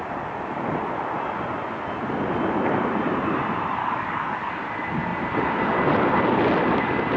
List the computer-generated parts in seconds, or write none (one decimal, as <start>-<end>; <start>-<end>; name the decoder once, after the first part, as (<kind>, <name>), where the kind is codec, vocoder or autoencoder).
3.8-4.5 (codec, DAC)

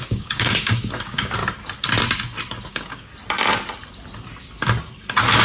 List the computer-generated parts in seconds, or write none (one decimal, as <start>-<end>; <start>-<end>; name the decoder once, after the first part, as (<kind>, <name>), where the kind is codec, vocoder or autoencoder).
0.0-1.4 (codec, DAC); 2.7-3.1

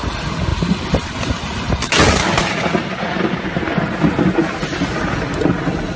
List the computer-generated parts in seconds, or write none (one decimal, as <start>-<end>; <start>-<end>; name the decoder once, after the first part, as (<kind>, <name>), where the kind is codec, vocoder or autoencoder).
none

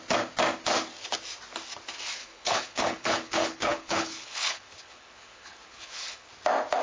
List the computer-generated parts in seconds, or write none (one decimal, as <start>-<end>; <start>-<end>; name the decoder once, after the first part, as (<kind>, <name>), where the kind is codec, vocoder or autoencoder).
2.2-6.3 (codec, HILCodec)

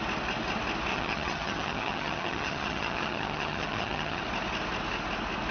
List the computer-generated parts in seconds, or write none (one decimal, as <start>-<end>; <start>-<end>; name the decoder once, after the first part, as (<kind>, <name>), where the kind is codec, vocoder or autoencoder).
0.9-4.2 (vocoder, HiFi-GAN)

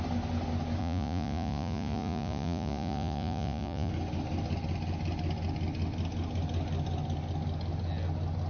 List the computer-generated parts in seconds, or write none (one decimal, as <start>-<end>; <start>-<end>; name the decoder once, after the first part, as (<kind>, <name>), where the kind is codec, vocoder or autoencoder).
0.8-3.9 (vocoder, Vocos)

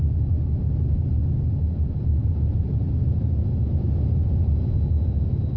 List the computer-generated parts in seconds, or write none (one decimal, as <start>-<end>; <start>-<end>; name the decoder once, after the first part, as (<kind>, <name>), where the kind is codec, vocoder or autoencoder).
none